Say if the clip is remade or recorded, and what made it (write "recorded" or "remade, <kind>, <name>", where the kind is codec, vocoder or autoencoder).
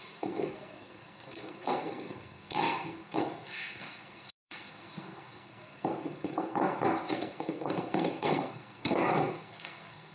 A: remade, codec, SNAC